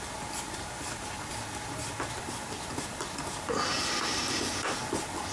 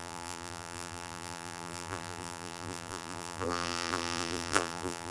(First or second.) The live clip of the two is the first